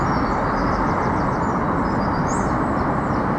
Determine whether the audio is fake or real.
real